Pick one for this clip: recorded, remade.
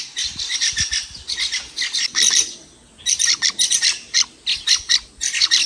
recorded